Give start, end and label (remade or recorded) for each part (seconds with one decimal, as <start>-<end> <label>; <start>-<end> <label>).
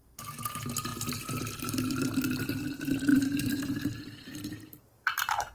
0.0-3.1 recorded; 3.1-5.5 remade